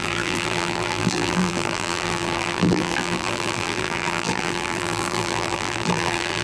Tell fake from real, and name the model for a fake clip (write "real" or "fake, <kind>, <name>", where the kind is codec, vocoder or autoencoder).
fake, vocoder, BigVGAN v2